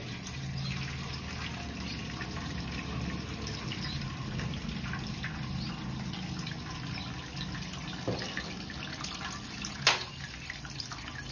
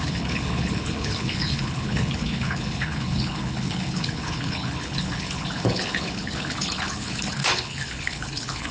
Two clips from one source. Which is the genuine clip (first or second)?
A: first